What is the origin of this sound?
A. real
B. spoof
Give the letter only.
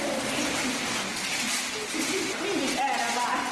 A